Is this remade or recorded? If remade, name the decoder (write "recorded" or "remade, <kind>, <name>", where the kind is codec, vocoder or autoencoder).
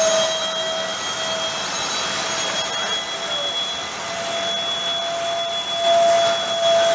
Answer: recorded